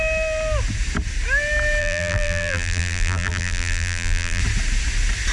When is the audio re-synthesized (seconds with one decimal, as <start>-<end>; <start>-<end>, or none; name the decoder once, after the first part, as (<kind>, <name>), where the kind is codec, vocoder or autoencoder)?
1.8-4.4 (vocoder, BigVGAN v2)